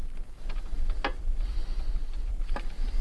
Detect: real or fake real